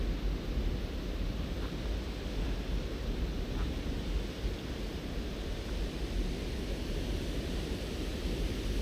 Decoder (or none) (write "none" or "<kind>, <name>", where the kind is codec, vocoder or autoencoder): none